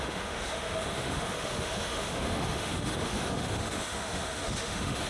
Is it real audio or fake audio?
fake